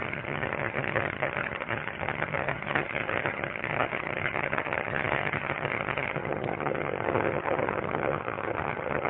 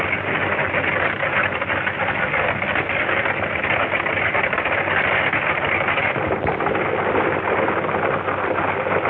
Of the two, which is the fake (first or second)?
first